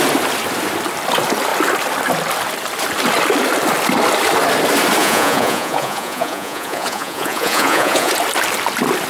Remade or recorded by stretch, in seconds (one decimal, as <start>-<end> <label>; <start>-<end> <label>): 0.0-5.0 recorded; 5.0-8.1 remade; 8.1-9.1 recorded